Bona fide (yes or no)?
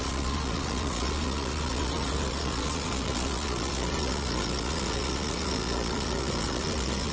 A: no